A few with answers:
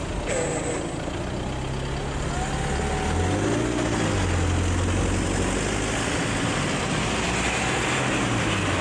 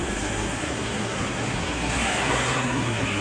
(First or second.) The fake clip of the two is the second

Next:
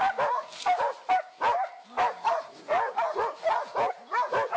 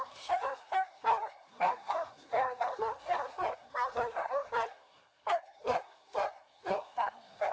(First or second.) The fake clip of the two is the second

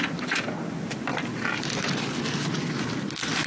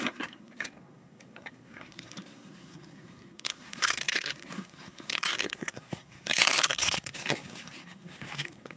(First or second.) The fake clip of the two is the second